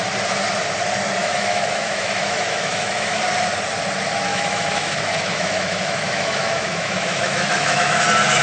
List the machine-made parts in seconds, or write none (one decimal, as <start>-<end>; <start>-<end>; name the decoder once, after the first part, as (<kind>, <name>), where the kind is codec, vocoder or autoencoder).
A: 1.2-3.2 (autoencoder, DAC-VAE); 4.3-8.0